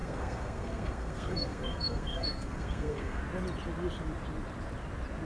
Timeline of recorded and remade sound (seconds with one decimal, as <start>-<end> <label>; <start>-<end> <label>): 0.0-3.2 remade; 3.2-5.3 recorded